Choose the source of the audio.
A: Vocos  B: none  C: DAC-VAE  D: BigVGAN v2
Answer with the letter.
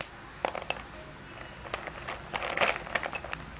B